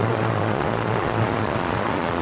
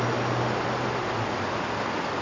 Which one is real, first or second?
second